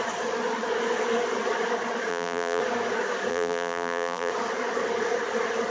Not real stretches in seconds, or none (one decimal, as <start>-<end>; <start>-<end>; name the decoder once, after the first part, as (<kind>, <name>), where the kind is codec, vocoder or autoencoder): 2.1-2.6 (vocoder, BigVGAN v2); 3.3-4.3